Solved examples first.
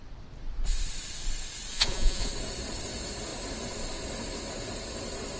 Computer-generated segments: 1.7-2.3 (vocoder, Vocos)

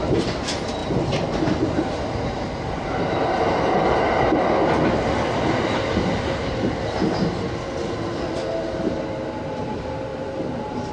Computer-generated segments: none